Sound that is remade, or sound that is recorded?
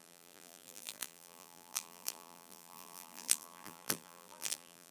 remade